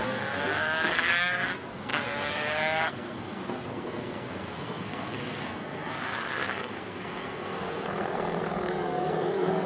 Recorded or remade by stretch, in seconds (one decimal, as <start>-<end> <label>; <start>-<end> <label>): 0.0-9.7 remade